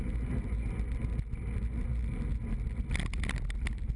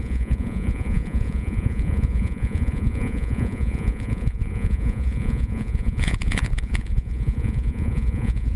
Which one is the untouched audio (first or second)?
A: first